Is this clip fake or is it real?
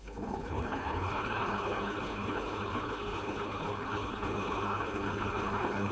fake